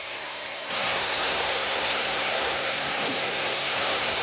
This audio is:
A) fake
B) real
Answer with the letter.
A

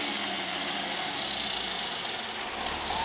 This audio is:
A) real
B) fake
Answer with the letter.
A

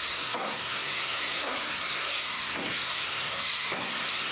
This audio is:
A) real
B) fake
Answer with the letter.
B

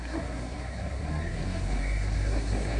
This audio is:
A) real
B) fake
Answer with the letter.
B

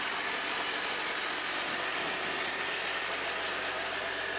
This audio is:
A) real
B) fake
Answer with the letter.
A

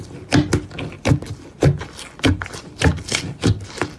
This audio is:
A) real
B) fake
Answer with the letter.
A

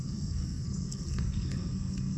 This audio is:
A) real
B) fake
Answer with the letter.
B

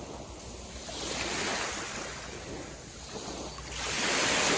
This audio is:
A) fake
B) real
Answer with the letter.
B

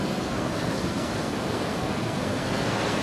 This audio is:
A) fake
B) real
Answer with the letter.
A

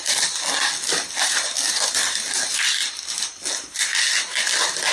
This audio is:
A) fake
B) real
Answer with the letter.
B